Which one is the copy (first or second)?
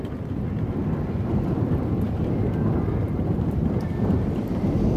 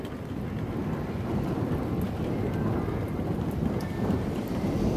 first